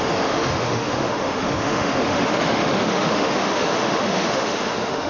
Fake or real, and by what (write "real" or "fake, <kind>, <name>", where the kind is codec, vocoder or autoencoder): fake, autoencoder, DAC-VAE